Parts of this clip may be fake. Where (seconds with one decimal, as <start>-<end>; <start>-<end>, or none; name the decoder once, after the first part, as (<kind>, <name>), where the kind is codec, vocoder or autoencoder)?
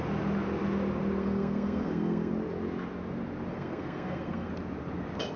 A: 1.2-2.3 (codec, SNAC); 3.5-4.5